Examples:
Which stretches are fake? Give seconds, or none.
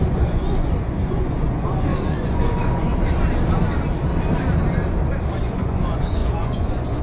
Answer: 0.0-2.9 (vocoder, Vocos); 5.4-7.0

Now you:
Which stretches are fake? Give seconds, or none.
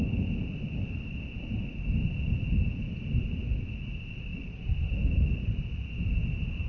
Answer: none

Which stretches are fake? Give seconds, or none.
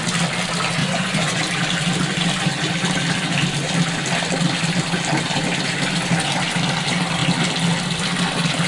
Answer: 0.8-1.4 (vocoder, Vocos)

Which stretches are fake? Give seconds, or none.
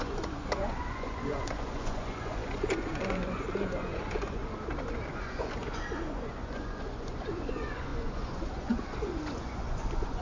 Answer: 0.0-4.4 (vocoder, Vocos); 5.1-10.2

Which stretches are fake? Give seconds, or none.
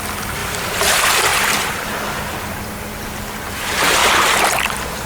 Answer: none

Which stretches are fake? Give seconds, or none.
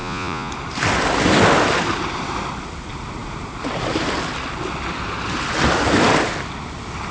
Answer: 0.0-0.5 (vocoder, Vocos)